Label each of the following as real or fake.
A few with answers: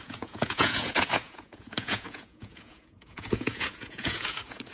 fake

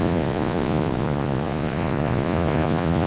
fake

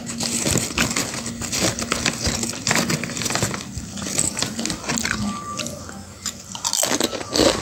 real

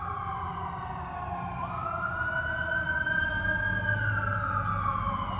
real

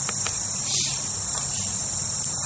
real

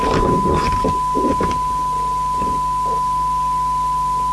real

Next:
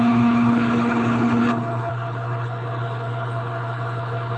fake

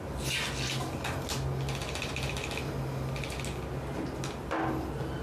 real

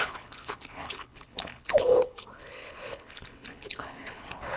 fake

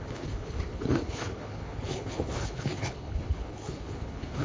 fake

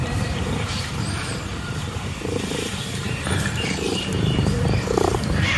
fake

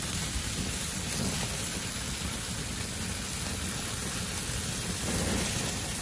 real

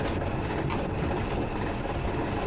real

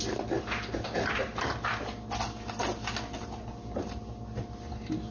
real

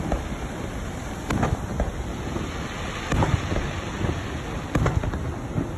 real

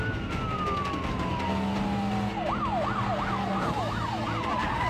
real